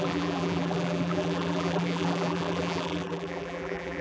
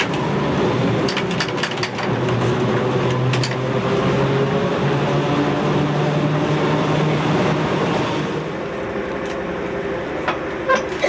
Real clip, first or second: second